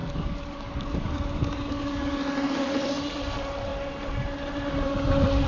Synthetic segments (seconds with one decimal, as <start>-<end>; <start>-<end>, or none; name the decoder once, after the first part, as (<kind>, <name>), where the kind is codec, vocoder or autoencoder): 0.0-2.1 (codec, DAC)